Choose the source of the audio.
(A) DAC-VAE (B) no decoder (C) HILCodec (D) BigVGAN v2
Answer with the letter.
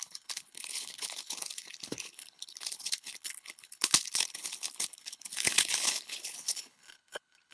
C